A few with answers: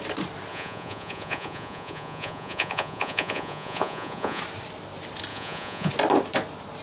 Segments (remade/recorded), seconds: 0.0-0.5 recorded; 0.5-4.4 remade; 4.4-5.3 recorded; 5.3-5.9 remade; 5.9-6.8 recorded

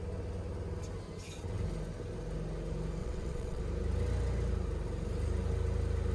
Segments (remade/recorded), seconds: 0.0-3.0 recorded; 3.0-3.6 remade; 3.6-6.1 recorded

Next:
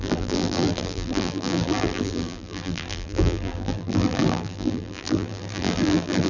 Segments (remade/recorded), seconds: 0.0-6.3 remade

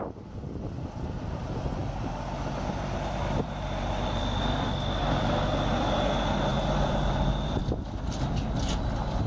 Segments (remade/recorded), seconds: 0.0-1.8 recorded; 1.8-4.2 remade; 4.2-6.5 recorded; 6.5-7.6 remade; 7.6-9.3 recorded

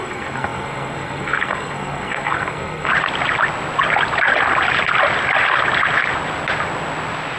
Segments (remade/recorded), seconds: 0.0-2.9 remade; 2.9-7.4 recorded

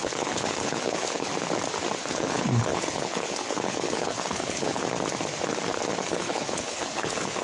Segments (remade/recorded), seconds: 0.0-1.3 remade; 1.3-2.1 recorded; 2.1-4.8 remade; 4.8-6.0 recorded; 6.0-7.4 remade

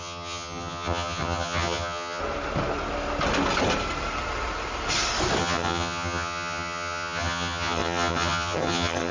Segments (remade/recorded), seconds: 0.0-2.2 remade; 2.2-5.4 recorded; 5.4-9.1 remade